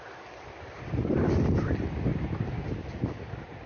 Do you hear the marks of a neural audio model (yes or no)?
no